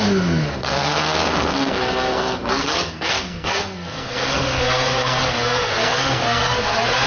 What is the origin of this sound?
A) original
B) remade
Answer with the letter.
B